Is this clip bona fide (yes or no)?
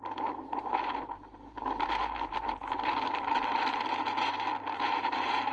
no